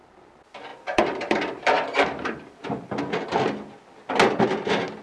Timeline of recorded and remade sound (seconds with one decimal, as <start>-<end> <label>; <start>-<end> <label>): 0.0-0.7 recorded; 0.7-3.0 remade; 3.0-5.0 recorded